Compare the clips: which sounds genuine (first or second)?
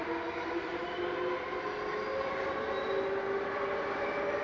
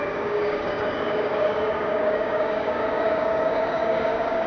first